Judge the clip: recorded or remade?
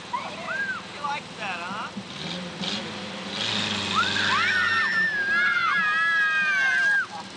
recorded